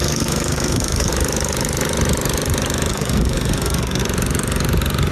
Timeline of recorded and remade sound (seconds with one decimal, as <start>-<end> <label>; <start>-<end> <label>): 0.0-1.1 remade; 1.1-2.9 recorded; 2.9-4.0 remade; 4.0-5.1 recorded